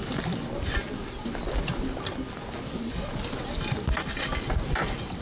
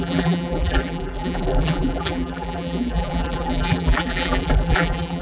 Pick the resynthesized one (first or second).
second